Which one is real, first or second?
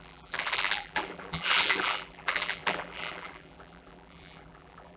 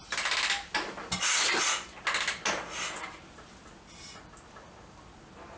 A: second